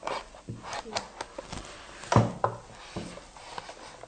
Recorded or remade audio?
recorded